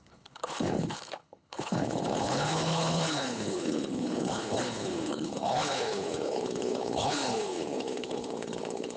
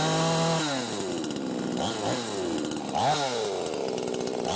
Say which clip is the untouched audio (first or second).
second